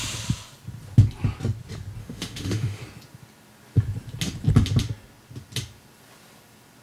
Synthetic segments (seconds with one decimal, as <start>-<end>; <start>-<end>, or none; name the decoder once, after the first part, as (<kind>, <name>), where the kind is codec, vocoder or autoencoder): 2.0-2.8 (autoencoder, DAC-VAE)